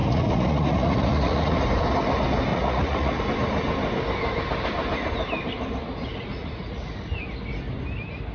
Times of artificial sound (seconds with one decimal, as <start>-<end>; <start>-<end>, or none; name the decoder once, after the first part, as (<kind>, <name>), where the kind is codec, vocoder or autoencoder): 0.0-1.6 (vocoder, Vocos); 2.5-3.2; 6.1-6.9